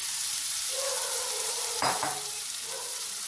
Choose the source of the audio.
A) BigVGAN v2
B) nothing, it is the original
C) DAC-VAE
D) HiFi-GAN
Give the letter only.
A